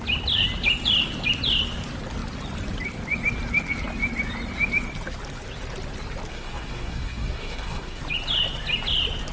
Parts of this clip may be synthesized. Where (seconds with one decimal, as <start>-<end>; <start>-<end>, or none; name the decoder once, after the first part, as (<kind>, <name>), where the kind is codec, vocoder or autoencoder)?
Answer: 6.3-8.0 (codec, SNAC)